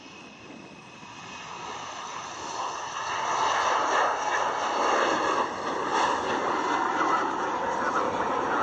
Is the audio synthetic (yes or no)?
no